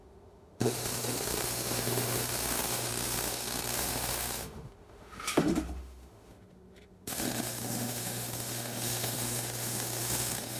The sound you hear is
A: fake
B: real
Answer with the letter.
A